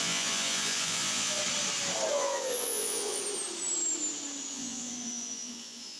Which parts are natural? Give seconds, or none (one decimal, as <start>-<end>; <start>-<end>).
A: 1.4-2.1; 3.2-4.5